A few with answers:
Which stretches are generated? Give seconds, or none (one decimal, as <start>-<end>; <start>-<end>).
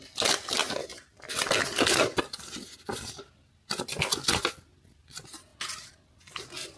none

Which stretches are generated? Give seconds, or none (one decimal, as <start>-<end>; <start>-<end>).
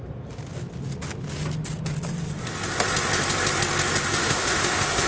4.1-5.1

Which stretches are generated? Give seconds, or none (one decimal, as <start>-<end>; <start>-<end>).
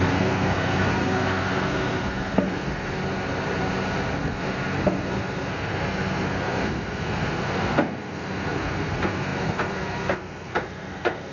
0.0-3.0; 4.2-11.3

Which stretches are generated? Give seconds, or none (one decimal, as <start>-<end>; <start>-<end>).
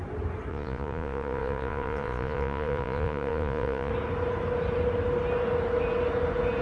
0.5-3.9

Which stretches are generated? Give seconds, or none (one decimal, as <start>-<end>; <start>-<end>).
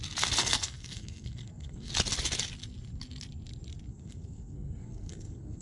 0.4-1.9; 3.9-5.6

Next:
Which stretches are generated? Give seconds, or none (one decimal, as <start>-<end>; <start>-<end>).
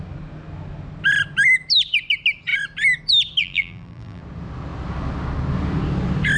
3.4-4.2